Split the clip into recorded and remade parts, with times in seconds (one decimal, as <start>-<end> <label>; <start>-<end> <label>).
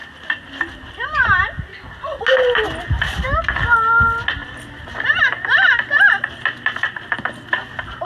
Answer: 0.0-8.0 recorded